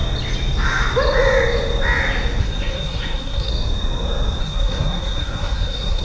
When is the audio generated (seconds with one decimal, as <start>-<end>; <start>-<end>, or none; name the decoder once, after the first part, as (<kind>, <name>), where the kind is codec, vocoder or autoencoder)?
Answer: 2.4-3.5 (codec, SNAC); 4.4-6.0